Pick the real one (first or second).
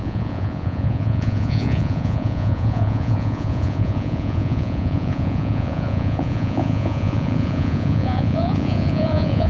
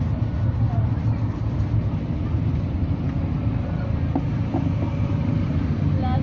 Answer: second